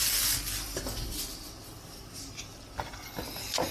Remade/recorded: recorded